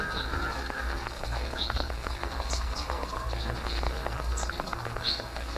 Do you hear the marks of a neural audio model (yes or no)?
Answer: yes